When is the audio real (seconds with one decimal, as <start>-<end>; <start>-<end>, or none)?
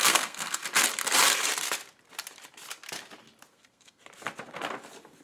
0.6-3.5; 4.0-5.2